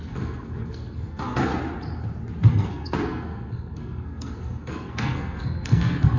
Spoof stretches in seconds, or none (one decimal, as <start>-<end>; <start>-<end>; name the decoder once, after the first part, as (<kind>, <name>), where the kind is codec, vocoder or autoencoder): 0.0-1.5 (codec, SNAC); 2.5-6.2